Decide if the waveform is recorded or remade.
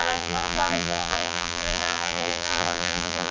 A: remade